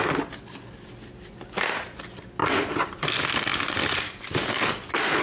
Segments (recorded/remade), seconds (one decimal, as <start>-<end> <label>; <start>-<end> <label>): 0.0-2.4 recorded; 2.4-3.1 remade; 3.1-3.5 recorded; 3.5-4.3 remade; 4.3-5.2 recorded